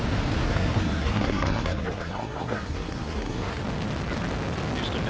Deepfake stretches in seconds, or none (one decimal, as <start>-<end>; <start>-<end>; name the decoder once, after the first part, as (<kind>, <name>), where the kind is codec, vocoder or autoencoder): 0.5-3.6 (codec, SNAC)